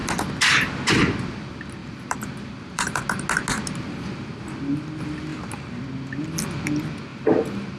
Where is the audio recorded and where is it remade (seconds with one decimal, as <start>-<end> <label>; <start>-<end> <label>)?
0.0-1.8 recorded; 1.8-3.0 remade; 3.0-5.3 recorded; 5.3-5.8 remade; 5.8-7.1 recorded; 7.1-7.8 remade

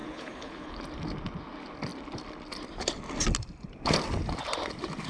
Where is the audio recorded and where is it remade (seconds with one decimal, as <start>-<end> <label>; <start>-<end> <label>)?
0.0-0.8 remade; 0.8-5.1 recorded

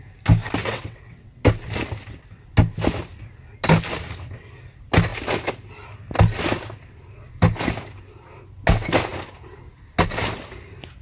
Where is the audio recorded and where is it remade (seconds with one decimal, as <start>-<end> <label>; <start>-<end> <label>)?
0.0-0.6 recorded; 0.6-1.4 remade; 1.4-11.0 recorded

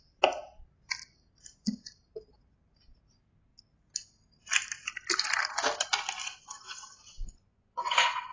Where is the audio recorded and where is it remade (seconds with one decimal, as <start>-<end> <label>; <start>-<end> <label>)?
0.0-6.2 recorded; 6.2-8.3 remade

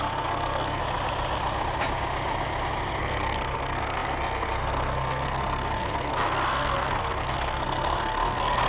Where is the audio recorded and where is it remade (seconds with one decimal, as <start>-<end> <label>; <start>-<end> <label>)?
0.0-0.8 remade; 0.8-3.0 recorded; 3.0-8.7 remade

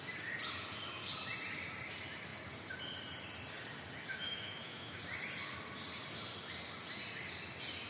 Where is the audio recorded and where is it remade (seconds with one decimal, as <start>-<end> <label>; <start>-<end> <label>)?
0.0-4.1 recorded; 4.1-5.0 remade; 5.0-7.9 recorded